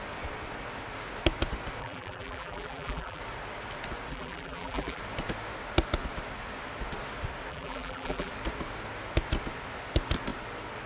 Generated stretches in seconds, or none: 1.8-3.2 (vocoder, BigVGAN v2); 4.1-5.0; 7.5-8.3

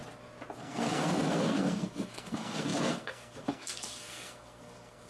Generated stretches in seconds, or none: 0.6-5.1 (codec, SNAC)

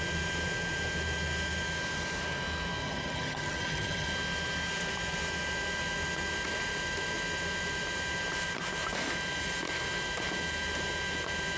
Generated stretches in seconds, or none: 2.8-4.1 (vocoder, HiFi-GAN)

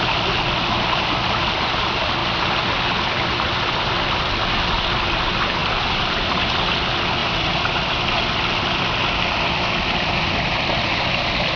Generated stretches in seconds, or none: 5.6-6.4 (vocoder, BigVGAN v2)

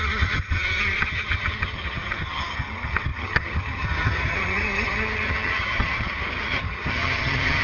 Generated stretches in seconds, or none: 0.0-7.6 (vocoder, HiFi-GAN)

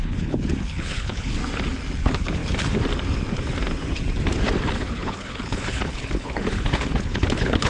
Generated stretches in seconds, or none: 0.0-1.4 (codec, HILCodec); 2.0-2.4; 4.7-7.7

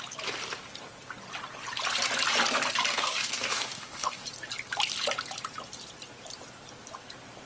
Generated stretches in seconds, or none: 2.9-4.2 (codec, DAC)